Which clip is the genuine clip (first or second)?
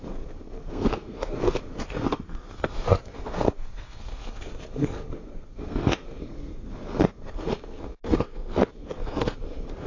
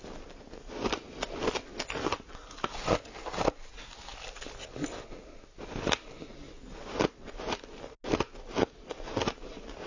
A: second